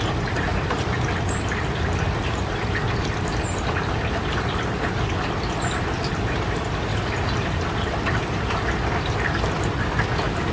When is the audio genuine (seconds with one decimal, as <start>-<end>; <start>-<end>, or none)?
0.0-10.5